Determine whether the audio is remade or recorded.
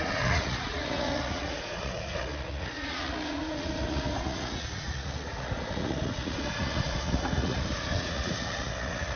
remade